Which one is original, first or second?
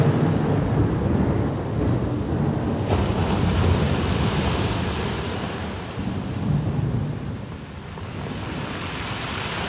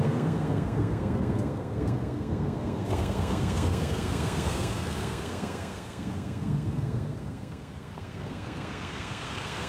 first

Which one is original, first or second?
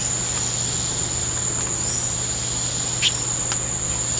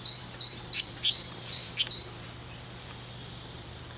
first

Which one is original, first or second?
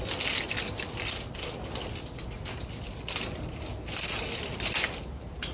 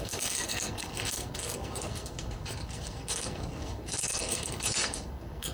first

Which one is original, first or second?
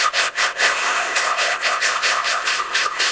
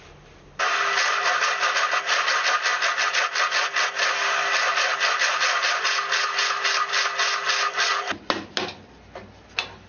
second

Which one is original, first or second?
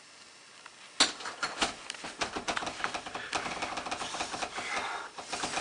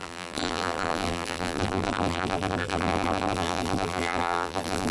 first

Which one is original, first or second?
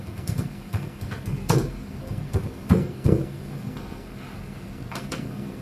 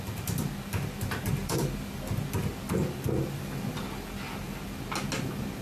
second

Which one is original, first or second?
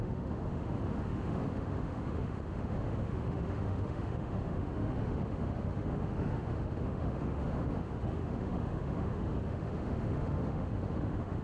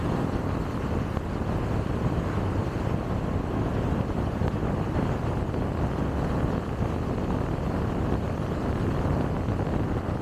second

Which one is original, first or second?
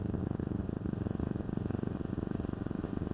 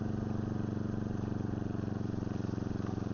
second